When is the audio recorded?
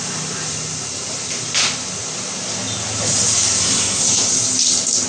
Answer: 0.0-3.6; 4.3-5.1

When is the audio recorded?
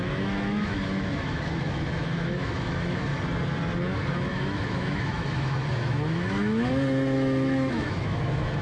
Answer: 3.1-4.1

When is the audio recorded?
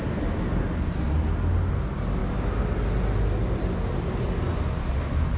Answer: 0.0-5.4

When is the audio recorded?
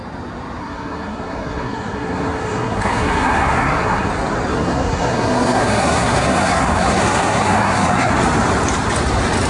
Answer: 0.0-0.6; 4.1-4.5; 8.1-9.5